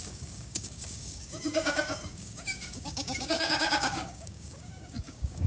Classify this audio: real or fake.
fake